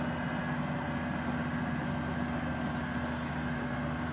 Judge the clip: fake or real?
real